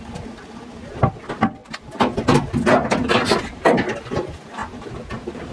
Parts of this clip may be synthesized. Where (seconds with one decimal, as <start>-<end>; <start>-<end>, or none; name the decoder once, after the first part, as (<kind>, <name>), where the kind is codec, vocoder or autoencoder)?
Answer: none